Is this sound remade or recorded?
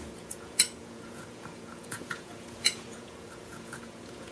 remade